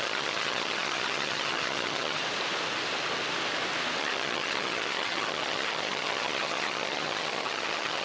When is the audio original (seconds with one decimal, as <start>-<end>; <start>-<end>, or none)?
2.2-4.0